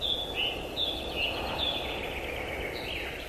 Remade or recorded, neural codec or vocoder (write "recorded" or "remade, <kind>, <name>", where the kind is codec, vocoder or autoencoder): recorded